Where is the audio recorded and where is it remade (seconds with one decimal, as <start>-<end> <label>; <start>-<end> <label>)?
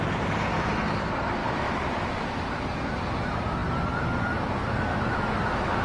0.0-1.4 recorded; 1.4-2.5 remade; 2.5-4.9 recorded; 4.9-5.8 remade